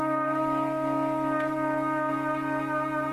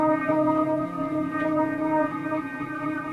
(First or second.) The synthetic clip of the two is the second